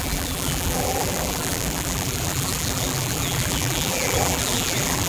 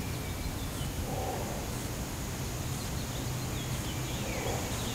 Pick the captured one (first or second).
second